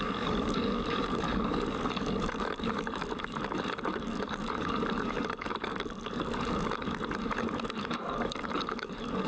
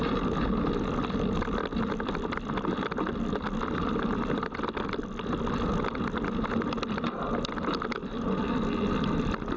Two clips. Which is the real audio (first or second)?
second